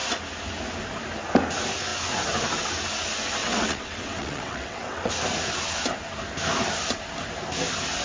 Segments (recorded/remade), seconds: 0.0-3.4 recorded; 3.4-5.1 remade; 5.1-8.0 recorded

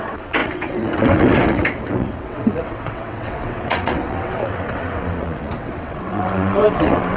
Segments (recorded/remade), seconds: 0.0-7.2 remade

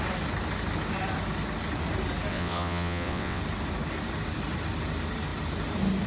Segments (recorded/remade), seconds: 0.0-2.3 recorded; 2.3-3.4 remade; 3.4-6.1 recorded

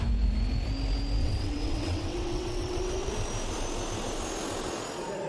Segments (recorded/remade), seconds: 0.0-1.2 recorded; 1.2-3.1 remade; 3.1-5.3 recorded

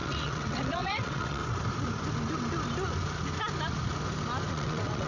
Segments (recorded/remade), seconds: 0.0-1.4 remade; 1.4-4.5 recorded; 4.5-5.1 remade